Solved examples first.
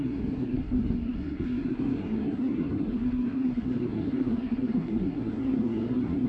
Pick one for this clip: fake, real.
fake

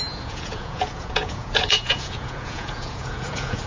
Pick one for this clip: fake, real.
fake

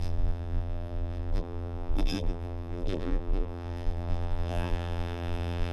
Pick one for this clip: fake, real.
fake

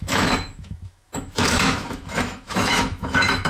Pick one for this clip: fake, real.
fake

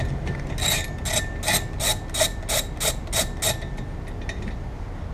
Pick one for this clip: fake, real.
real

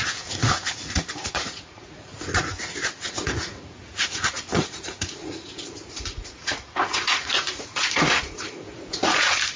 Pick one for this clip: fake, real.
fake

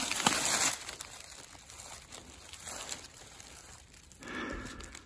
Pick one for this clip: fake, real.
real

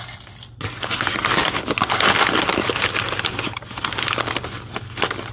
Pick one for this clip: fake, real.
real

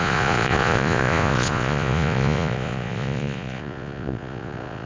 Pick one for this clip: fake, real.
fake